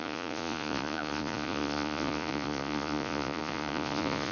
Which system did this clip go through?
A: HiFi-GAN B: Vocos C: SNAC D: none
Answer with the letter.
B